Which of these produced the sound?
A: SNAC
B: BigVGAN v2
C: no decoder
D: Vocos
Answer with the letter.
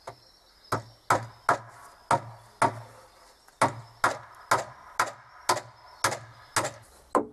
C